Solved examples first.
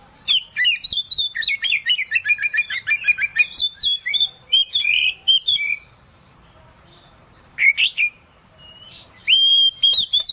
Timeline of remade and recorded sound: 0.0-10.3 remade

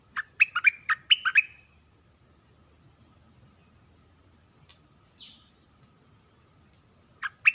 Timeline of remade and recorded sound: 0.0-7.5 recorded